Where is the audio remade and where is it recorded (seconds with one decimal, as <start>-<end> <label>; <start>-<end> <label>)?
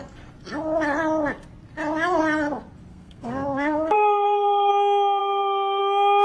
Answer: 0.0-2.9 recorded; 2.9-4.7 remade; 4.7-5.2 recorded; 5.2-5.8 remade; 5.8-6.2 recorded